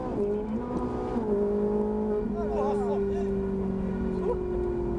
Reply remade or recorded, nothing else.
recorded